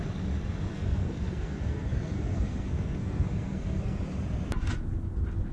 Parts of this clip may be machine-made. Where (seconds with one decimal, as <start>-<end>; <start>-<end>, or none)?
0.7-4.0